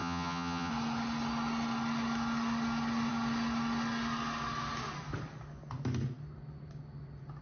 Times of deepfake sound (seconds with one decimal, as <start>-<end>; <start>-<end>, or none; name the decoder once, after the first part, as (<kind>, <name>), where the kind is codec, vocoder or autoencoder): 0.0-0.7 (vocoder, HiFi-GAN)